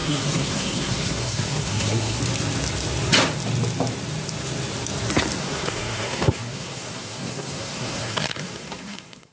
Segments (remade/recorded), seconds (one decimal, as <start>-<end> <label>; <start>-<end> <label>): 0.0-2.2 remade; 2.2-5.4 recorded; 5.4-9.3 remade